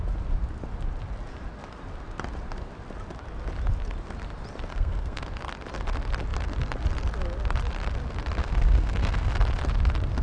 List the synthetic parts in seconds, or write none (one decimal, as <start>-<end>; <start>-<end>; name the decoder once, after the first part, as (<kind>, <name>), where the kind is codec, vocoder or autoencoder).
4.7-5.2 (codec, SNAC); 8.4-9.3